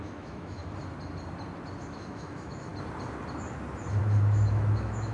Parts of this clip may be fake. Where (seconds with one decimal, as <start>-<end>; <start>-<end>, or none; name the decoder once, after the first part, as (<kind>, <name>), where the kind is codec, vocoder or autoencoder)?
0.0-0.6 (autoencoder, DAC-VAE); 1.9-2.7; 4.0-5.1